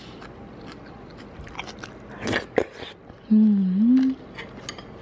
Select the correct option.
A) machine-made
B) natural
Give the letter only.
B